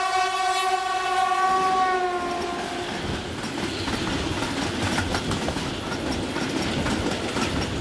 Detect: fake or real real